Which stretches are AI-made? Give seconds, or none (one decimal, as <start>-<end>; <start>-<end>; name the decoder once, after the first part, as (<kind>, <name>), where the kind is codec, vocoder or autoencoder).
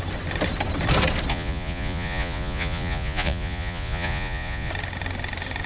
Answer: 1.3-4.7 (vocoder, Vocos)